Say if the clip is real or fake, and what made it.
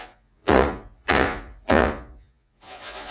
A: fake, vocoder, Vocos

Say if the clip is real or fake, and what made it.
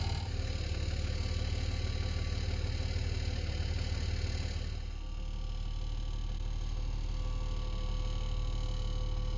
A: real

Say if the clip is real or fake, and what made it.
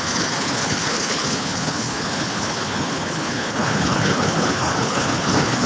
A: fake, codec, HILCodec